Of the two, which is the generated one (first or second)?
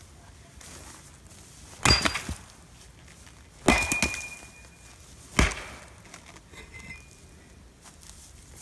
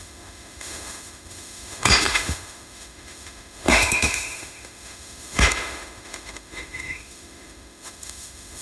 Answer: second